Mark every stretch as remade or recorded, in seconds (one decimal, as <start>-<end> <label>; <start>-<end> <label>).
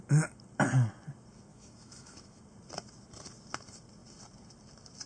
0.0-1.5 recorded; 1.5-2.4 remade; 2.4-5.1 recorded